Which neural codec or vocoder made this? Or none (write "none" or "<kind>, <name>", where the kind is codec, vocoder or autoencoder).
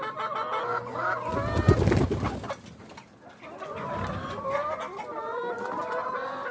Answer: none